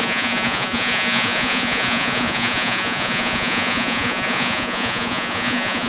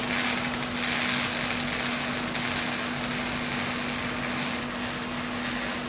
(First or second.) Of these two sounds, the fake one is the first